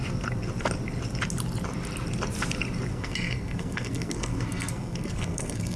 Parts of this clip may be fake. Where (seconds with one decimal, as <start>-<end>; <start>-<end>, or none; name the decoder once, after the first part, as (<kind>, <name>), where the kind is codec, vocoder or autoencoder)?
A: 2.9-5.8 (codec, SNAC)